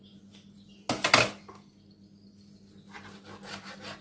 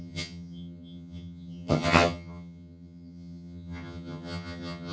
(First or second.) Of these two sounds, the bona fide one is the first